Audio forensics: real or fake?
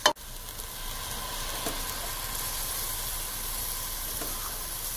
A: real